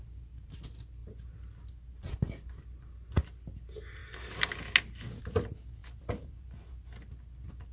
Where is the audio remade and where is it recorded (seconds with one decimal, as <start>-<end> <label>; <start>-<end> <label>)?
0.0-5.8 recorded; 5.8-6.7 remade; 6.7-7.7 recorded